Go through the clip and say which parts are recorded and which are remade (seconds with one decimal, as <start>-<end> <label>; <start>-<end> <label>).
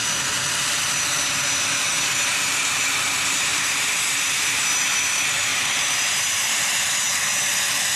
0.0-3.5 recorded; 3.5-4.6 remade; 4.6-5.5 recorded; 5.5-6.9 remade; 6.9-8.0 recorded